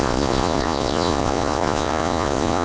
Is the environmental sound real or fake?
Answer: fake